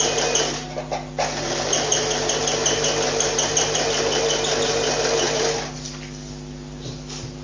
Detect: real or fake real